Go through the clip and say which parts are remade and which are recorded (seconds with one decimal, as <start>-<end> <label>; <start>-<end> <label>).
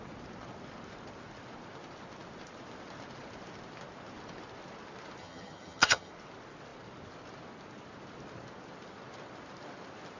0.0-5.2 recorded; 5.2-6.1 remade; 6.1-10.2 recorded